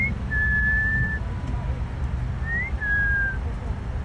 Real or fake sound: real